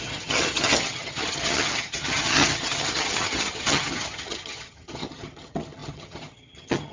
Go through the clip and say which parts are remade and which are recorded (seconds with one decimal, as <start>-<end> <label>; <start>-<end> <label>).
0.0-6.9 remade